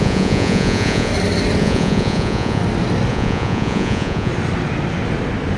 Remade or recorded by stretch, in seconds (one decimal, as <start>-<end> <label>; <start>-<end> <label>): 0.0-1.1 remade; 1.1-1.6 recorded; 1.6-2.6 remade; 2.6-3.1 recorded; 3.1-4.3 remade; 4.3-5.6 recorded